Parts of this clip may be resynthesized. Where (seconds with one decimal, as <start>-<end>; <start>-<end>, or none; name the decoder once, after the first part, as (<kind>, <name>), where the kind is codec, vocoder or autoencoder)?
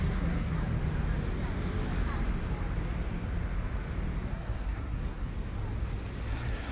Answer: 0.0-0.6 (codec, SNAC); 4.3-5.3; 6.3-6.7